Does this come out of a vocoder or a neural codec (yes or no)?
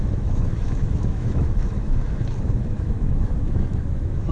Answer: yes